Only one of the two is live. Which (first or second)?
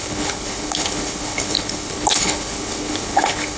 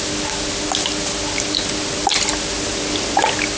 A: second